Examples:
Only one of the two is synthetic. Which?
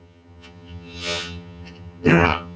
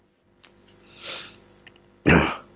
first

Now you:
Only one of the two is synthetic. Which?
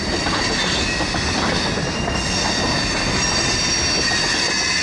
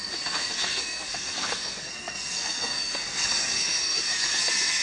second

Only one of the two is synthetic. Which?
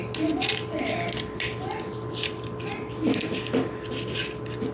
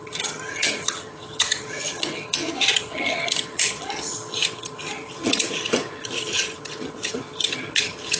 second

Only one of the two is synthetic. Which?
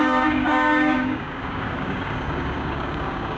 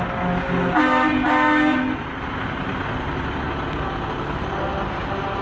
first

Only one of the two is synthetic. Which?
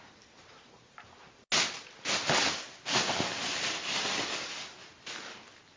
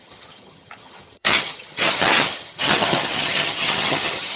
second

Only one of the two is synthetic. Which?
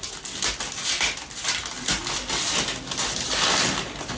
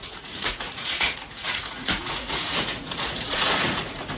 second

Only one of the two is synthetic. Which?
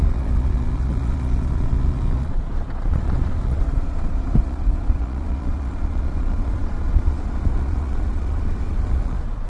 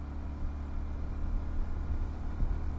first